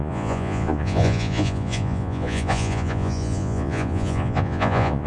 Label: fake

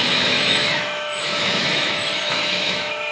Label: fake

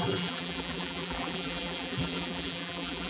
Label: fake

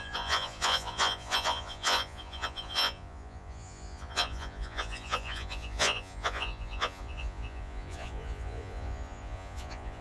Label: fake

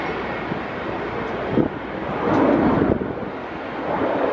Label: real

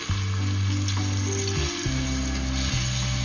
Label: real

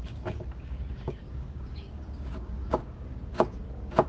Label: fake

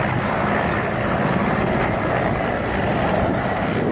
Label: real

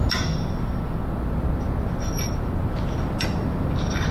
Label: real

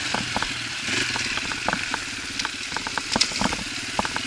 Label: real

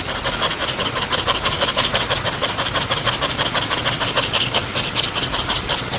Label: fake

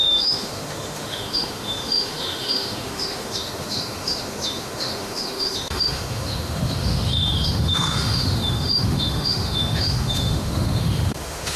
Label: fake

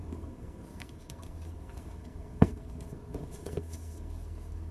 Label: fake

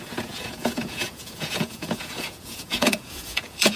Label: fake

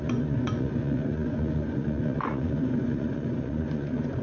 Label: fake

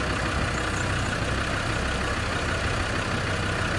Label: real